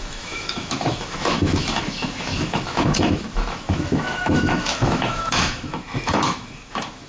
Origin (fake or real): fake